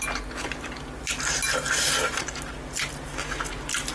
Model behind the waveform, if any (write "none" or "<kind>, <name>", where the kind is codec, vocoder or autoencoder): none